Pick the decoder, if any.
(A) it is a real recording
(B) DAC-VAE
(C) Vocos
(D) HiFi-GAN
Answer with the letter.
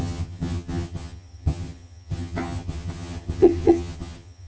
D